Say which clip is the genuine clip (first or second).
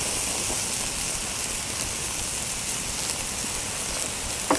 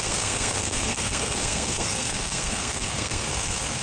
first